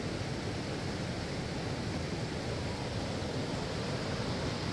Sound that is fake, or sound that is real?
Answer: real